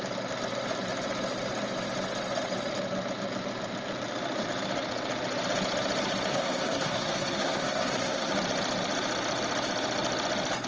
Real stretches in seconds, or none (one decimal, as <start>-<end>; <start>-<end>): 0.0-6.3; 8.3-10.7

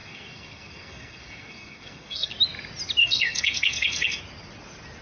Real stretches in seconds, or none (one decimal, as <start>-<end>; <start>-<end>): 2.3-3.0; 4.2-5.0

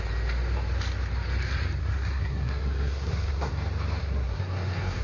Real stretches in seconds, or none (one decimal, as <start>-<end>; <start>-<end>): 0.0-1.8; 3.5-4.0

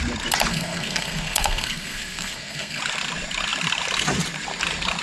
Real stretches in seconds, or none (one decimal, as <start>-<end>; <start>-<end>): 0.0-0.5; 2.8-5.0